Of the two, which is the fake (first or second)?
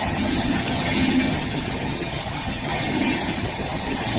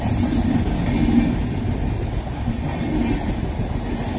first